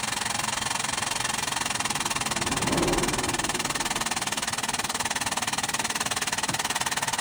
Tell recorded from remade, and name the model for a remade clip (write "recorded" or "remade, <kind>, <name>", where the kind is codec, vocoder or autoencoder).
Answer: recorded